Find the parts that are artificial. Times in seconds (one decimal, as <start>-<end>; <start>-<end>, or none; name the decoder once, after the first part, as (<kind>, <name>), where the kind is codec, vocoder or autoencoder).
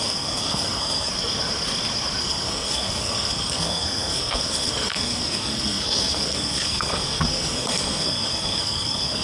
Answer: 0.0-1.1 (codec, SNAC); 2.2-9.2